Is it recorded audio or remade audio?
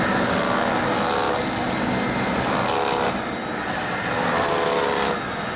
recorded